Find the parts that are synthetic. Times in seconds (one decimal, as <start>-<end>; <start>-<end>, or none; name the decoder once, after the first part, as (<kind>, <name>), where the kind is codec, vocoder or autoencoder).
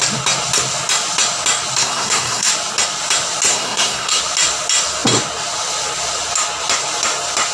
1.8-2.5 (codec, SNAC); 3.5-4.2